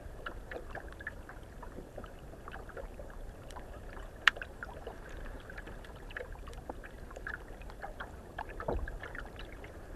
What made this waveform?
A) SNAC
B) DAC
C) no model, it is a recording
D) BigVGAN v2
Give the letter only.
D